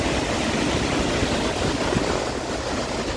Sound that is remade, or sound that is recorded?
recorded